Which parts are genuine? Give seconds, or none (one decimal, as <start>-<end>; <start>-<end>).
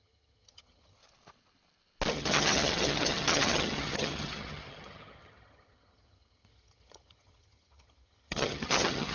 1.0-2.1